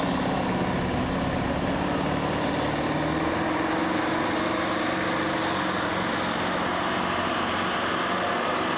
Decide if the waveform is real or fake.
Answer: real